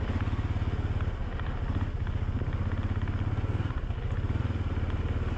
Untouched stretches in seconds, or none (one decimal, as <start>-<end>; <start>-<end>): 0.0-5.4